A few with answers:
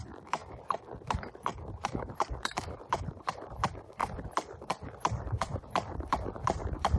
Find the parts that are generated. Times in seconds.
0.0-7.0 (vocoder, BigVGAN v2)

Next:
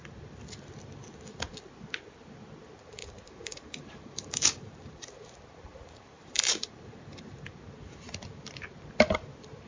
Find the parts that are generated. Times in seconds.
3.0-7.2 (vocoder, BigVGAN v2)

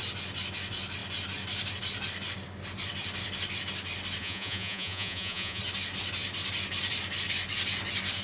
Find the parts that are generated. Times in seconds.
4.2-5.6 (vocoder, Vocos)

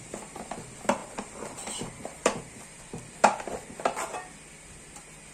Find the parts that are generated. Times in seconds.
1.0-2.8 (vocoder, BigVGAN v2)

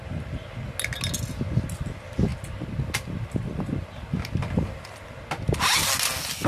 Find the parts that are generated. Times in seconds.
none

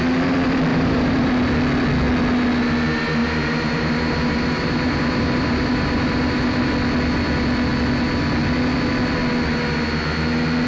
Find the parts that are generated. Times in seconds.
0.7-1.3 (vocoder, BigVGAN v2); 3.2-6.7

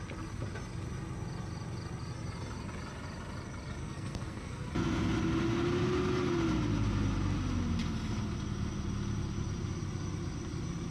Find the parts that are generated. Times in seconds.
3.8-4.7 (codec, SNAC)

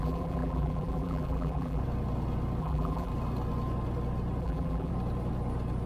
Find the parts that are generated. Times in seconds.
0.0-1.8 (vocoder, BigVGAN v2); 2.6-3.1; 4.4-4.9